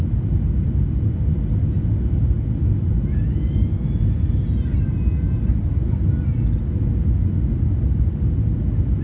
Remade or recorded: recorded